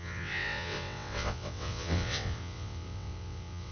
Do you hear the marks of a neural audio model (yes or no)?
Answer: yes